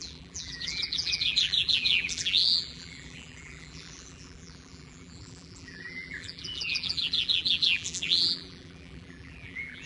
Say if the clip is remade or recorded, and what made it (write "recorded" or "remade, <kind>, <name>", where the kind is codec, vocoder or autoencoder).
remade, vocoder, BigVGAN v2